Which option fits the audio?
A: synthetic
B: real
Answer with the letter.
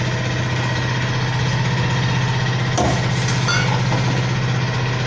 B